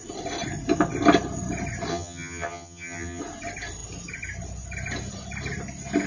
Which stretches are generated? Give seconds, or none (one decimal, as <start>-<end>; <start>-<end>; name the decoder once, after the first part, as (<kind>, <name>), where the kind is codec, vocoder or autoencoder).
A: 1.9-3.2 (vocoder, HiFi-GAN)